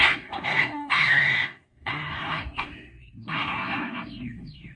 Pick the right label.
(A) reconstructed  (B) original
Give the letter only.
A